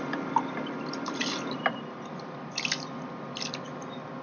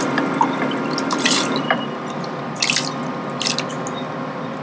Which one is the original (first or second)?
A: second